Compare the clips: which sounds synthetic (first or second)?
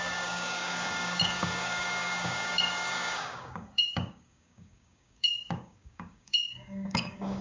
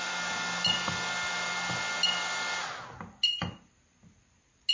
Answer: first